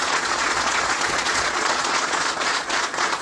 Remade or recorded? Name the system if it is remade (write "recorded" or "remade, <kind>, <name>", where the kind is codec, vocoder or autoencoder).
remade, vocoder, Vocos